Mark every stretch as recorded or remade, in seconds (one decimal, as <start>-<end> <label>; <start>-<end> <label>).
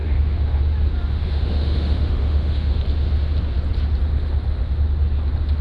0.0-0.6 remade; 0.6-1.1 recorded; 1.1-2.8 remade; 2.8-5.6 recorded